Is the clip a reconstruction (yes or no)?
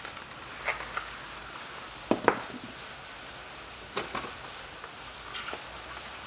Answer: no